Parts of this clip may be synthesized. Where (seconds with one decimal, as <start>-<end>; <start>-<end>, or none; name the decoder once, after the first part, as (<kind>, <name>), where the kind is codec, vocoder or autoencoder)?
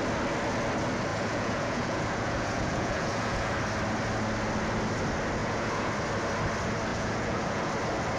1.1-3.5 (vocoder, Vocos); 5.4-5.9; 6.9-7.7